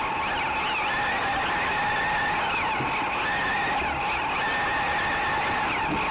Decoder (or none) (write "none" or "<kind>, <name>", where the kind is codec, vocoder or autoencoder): none